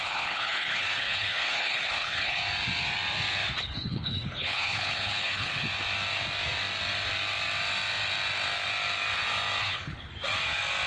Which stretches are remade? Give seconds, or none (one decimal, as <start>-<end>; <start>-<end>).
0.0-2.4; 3.6-5.6; 9.6-10.1